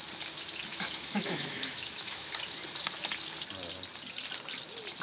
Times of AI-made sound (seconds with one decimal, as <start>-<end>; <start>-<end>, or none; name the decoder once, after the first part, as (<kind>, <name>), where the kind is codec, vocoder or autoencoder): 0.7-2.3 (autoencoder, DAC-VAE)